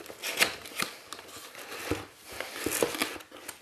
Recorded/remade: recorded